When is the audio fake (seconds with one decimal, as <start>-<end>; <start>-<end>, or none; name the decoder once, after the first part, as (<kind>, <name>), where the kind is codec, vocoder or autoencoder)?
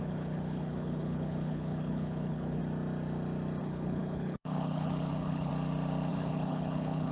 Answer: 0.0-2.6 (codec, HILCodec); 3.6-5.5; 6.1-7.1